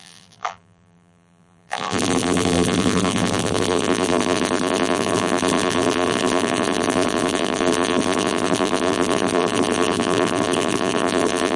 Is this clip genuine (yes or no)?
no